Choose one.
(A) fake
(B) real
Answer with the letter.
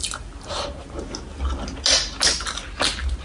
B